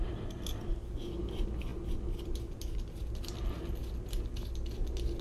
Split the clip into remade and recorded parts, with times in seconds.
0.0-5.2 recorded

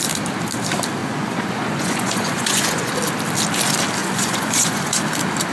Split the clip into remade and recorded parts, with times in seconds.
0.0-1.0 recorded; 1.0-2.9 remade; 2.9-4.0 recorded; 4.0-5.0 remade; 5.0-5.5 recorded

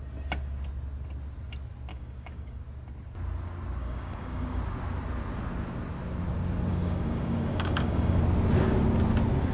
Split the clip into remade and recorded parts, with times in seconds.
0.0-1.9 recorded; 1.9-2.6 remade; 2.6-3.8 recorded; 3.8-4.6 remade; 4.6-6.7 recorded; 6.7-8.2 remade; 8.2-9.5 recorded

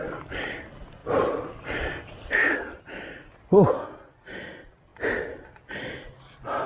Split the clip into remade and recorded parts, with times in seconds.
0.0-6.7 recorded

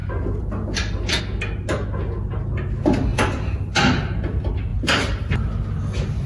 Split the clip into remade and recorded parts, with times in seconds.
0.0-1.2 remade; 1.2-3.1 recorded; 3.1-4.0 remade; 4.0-4.7 recorded; 4.7-5.3 remade; 5.3-6.3 recorded

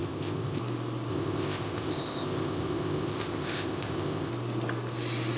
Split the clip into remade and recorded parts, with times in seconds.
0.0-0.6 remade; 0.6-1.1 recorded; 1.1-4.3 remade; 4.3-5.4 recorded

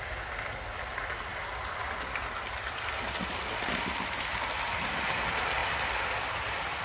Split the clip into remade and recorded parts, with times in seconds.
0.0-6.8 recorded